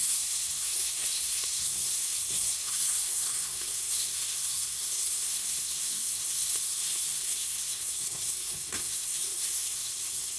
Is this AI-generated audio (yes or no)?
yes